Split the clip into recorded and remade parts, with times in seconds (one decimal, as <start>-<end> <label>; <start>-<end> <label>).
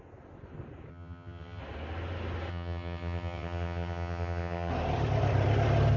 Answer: 0.0-0.9 recorded; 0.9-1.6 remade; 1.6-2.5 recorded; 2.5-4.7 remade; 4.7-6.0 recorded